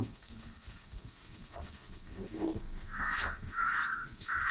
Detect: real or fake fake